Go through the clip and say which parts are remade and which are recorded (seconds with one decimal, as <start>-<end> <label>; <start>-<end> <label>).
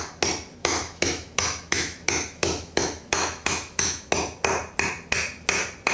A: 0.0-0.6 recorded; 0.6-4.1 remade; 4.1-5.9 recorded